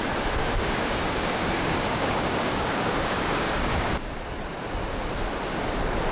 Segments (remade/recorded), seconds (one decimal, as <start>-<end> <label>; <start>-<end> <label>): 0.0-0.4 recorded; 0.4-4.1 remade; 4.1-6.1 recorded